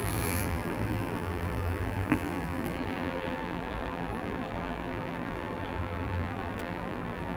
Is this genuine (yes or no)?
no